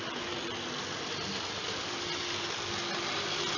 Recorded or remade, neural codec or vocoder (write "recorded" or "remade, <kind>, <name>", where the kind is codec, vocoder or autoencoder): recorded